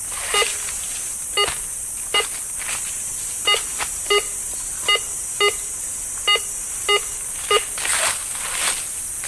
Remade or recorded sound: recorded